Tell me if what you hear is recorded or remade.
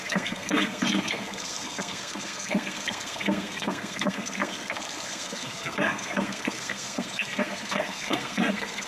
remade